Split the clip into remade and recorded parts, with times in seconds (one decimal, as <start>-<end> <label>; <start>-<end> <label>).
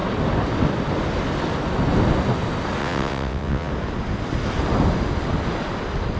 0.0-2.8 recorded; 2.8-3.7 remade; 3.7-6.2 recorded